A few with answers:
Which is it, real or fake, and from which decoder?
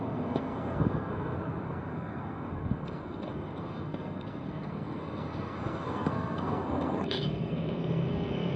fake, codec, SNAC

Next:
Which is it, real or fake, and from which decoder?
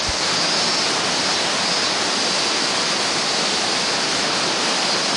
real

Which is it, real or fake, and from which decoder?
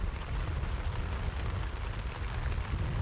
real